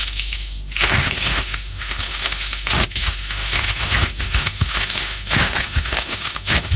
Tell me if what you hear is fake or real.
fake